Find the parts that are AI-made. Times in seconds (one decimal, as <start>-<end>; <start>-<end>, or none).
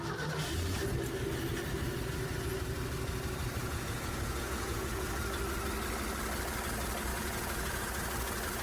3.6-5.1; 7.1-7.8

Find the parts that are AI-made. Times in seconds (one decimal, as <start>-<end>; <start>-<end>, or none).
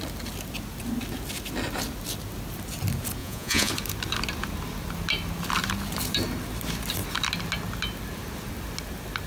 3.2-3.7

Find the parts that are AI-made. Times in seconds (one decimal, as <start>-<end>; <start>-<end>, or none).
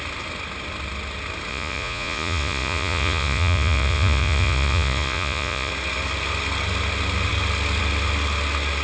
1.5-5.7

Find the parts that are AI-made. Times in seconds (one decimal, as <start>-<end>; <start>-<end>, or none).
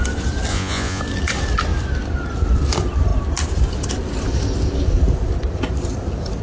0.5-1.0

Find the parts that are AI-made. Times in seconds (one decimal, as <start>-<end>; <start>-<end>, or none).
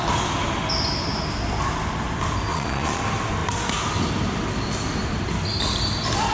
2.5-3.0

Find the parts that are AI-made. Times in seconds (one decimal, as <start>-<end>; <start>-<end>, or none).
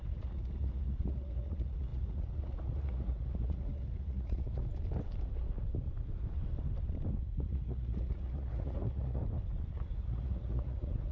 0.0-4.6; 7.1-9.2; 9.7-11.1